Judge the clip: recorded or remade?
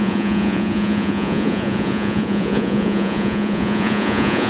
remade